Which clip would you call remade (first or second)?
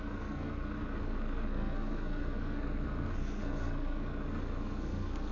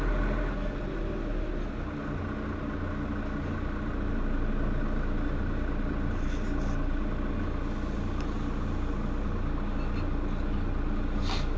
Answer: first